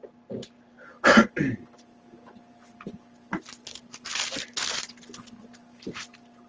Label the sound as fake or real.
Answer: real